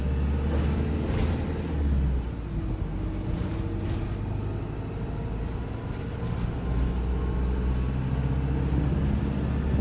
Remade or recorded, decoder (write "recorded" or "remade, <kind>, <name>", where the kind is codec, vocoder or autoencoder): recorded